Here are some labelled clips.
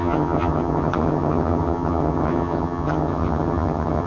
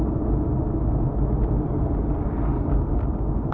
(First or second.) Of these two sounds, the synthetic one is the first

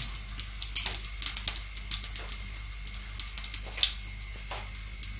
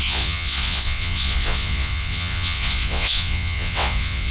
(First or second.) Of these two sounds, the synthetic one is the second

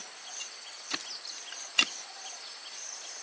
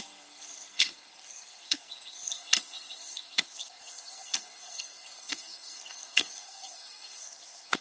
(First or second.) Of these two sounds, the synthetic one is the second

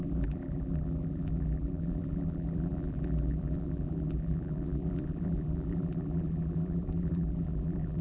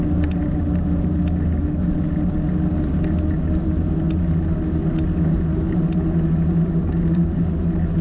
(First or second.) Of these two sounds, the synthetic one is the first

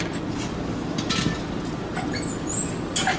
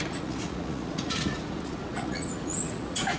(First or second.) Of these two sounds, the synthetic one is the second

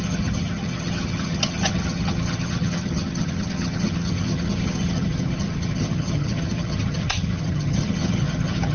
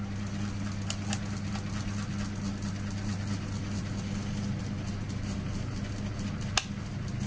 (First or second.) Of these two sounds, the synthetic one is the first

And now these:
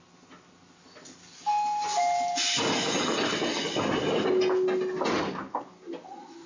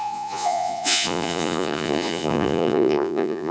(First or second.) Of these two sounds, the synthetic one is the second